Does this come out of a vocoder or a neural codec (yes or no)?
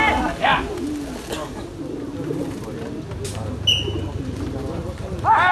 no